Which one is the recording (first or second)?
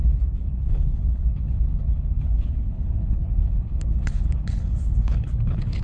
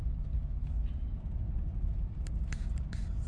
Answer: second